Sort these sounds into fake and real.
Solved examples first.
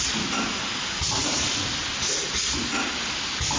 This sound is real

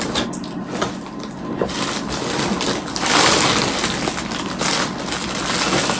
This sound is real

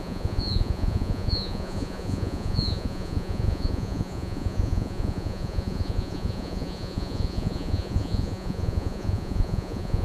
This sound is fake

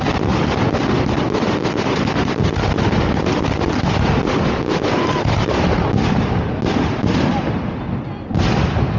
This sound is real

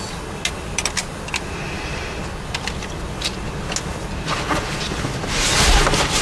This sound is real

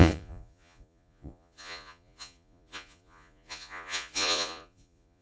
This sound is fake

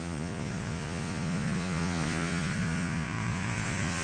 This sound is fake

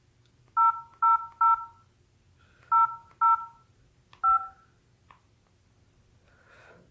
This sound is real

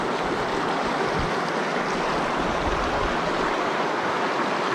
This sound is real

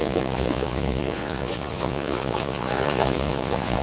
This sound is fake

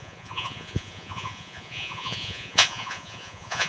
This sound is fake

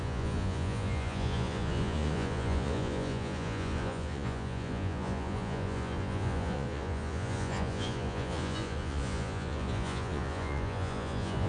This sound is fake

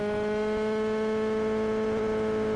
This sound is real